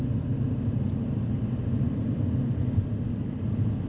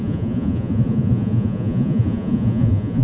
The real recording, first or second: first